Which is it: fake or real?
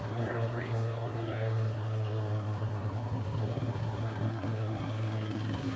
fake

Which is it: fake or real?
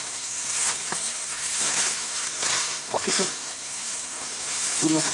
fake